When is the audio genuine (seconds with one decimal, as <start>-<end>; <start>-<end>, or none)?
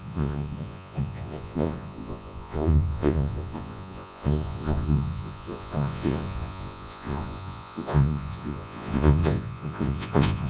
none